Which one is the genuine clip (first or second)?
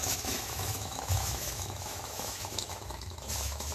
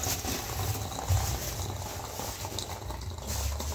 second